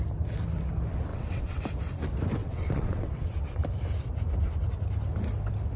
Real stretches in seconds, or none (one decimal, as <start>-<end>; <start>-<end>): 0.0-1.1; 1.6-2.4; 3.6-5.8